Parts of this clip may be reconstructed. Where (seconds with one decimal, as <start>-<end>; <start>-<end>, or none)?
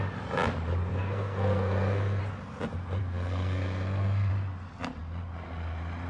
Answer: 0.9-2.2; 3.0-4.3